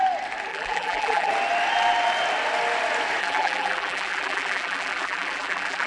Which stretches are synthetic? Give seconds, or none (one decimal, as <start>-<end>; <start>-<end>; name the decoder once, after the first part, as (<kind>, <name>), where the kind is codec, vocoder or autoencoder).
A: 0.5-1.3 (vocoder, BigVGAN v2); 3.2-5.9